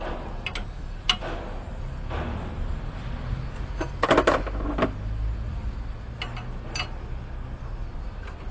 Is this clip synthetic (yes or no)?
no